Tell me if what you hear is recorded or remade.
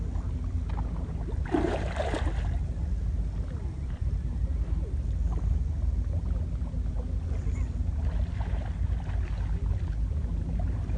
recorded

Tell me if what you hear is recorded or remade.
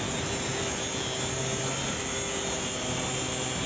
recorded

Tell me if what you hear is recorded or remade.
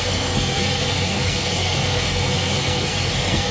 remade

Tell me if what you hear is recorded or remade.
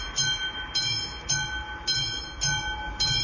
recorded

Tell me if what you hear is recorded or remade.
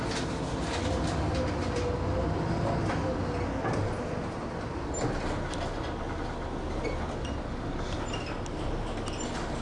recorded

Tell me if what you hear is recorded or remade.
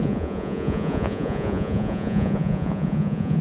remade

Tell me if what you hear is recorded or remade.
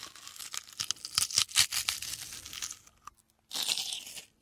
recorded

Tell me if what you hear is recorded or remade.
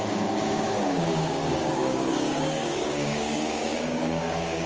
remade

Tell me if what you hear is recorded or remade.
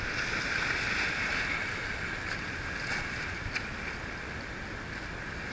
recorded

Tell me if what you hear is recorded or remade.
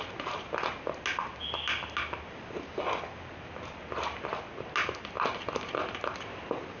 recorded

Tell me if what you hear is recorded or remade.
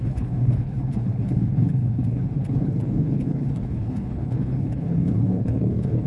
remade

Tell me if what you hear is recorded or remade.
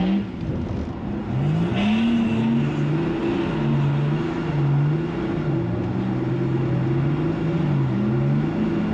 recorded